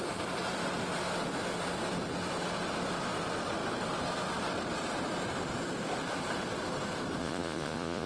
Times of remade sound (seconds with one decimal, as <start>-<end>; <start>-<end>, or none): 7.2-8.1